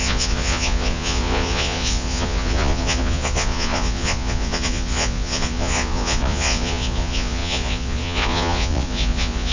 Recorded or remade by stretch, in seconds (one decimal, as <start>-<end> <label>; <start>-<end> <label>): 0.0-9.5 remade

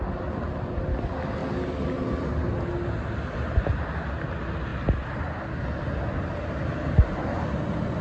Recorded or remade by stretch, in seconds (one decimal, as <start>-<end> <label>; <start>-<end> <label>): 0.0-8.0 recorded

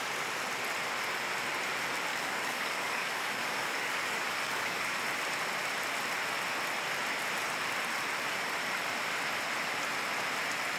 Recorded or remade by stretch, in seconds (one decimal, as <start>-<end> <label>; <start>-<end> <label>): 0.0-2.1 recorded; 2.1-5.0 remade; 5.0-10.8 recorded

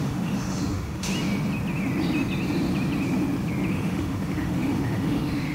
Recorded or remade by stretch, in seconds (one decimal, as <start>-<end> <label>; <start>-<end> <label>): 0.0-1.1 remade; 1.1-3.7 recorded; 3.7-5.5 remade

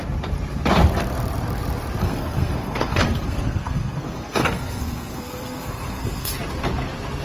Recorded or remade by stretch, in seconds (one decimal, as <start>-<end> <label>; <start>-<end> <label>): 0.0-2.0 recorded; 2.0-6.3 remade; 6.3-7.2 recorded

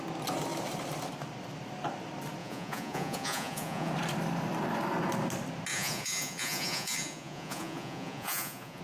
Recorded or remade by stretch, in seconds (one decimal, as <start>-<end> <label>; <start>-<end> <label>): 0.0-2.4 recorded; 2.4-3.9 remade; 3.9-5.7 recorded; 5.7-8.8 remade

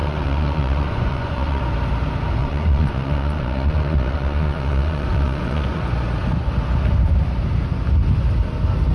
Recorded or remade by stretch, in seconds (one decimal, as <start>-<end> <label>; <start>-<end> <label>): 0.0-1.6 remade; 1.6-2.4 recorded; 2.4-5.8 remade; 5.8-8.9 recorded